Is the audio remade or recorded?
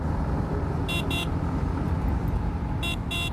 recorded